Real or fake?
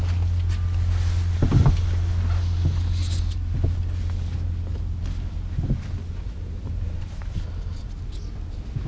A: real